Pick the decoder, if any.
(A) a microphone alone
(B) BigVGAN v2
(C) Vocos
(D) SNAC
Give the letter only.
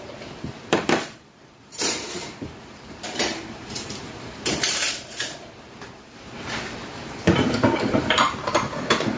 B